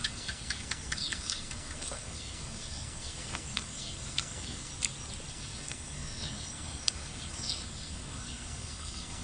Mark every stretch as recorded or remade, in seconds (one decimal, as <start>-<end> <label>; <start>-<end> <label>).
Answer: 0.0-4.7 remade; 4.7-5.3 recorded; 5.3-9.2 remade